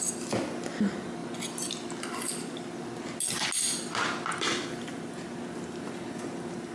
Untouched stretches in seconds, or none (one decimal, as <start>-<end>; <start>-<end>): 0.0-6.7